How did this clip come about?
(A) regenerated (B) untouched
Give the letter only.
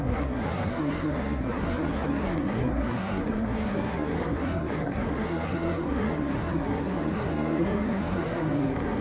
A